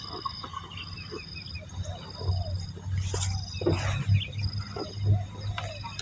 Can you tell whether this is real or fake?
real